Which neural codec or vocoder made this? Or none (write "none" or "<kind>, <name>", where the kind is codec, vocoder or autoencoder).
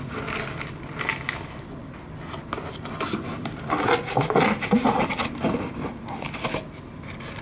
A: none